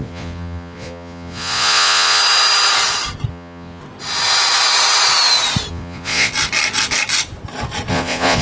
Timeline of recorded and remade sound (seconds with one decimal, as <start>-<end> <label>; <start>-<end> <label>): 0.0-2.2 remade; 2.2-3.3 recorded; 3.3-3.8 remade; 3.8-5.7 recorded; 5.7-6.3 remade; 6.3-7.9 recorded; 7.9-8.4 remade